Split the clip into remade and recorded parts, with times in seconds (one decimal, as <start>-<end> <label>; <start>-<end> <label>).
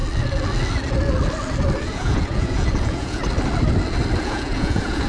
0.0-1.8 recorded; 1.8-3.2 remade; 3.2-4.2 recorded; 4.2-5.1 remade